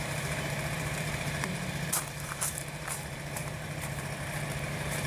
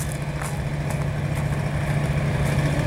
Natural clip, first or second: second